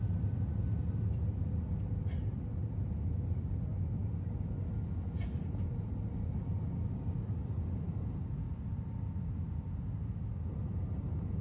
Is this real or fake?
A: real